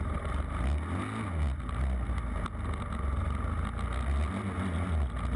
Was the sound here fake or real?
real